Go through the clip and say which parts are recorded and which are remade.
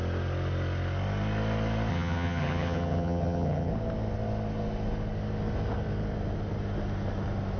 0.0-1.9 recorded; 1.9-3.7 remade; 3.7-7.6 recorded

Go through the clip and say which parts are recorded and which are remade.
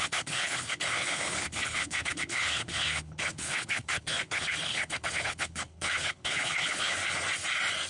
0.0-7.0 remade; 7.0-7.9 recorded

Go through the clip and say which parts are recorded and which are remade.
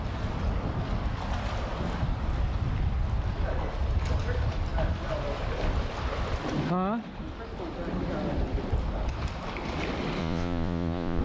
0.0-10.2 recorded; 10.2-11.2 remade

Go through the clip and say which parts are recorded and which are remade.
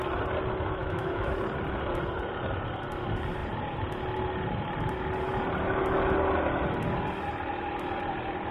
0.0-0.8 recorded; 0.8-1.3 remade; 1.3-8.5 recorded